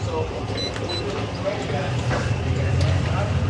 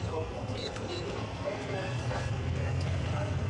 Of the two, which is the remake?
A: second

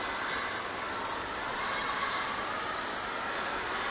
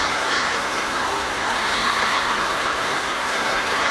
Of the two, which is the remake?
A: second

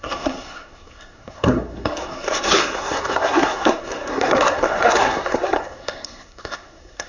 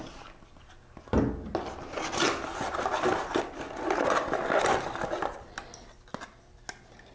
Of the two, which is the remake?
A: first